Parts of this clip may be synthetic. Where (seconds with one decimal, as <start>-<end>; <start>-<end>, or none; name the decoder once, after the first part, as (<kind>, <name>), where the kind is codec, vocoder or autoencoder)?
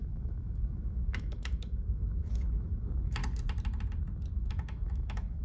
0.0-3.2 (autoencoder, DAC-VAE); 4.3-5.4